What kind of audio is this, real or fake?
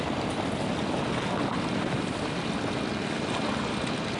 real